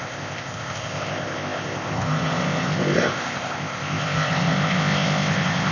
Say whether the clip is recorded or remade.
remade